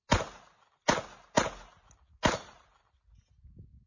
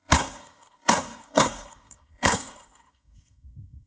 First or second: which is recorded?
first